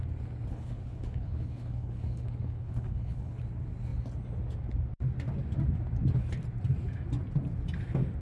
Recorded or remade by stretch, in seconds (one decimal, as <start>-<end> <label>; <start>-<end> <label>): 0.0-0.5 recorded; 0.5-3.4 remade; 3.4-8.2 recorded